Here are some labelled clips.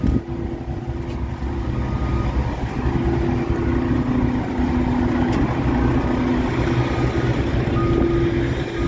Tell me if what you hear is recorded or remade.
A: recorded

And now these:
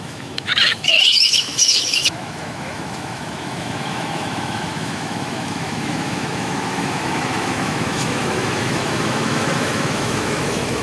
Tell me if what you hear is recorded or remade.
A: remade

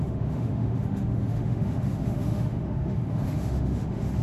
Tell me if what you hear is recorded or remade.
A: remade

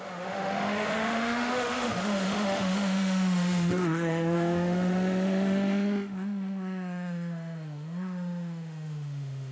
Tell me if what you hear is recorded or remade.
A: remade